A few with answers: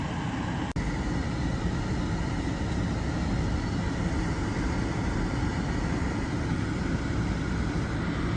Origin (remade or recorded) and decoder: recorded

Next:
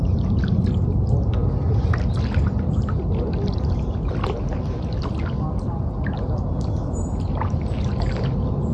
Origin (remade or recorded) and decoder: recorded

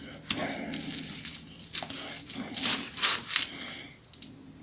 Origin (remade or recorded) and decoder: recorded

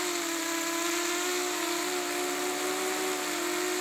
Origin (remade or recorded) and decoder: recorded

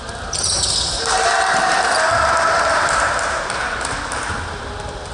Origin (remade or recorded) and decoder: recorded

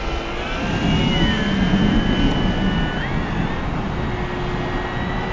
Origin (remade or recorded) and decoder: recorded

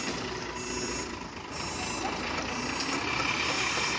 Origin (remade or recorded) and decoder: recorded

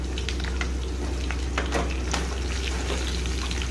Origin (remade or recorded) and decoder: recorded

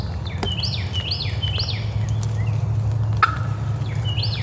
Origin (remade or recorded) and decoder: recorded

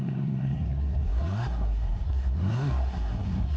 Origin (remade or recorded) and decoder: remade, codec, SNAC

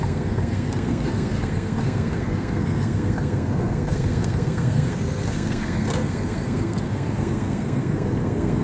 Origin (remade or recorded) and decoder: remade, codec, SNAC